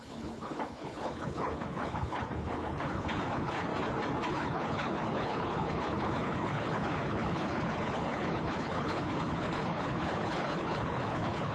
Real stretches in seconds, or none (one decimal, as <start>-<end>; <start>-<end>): 3.7-4.3